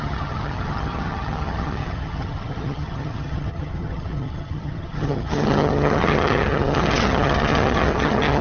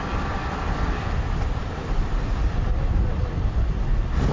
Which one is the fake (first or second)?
first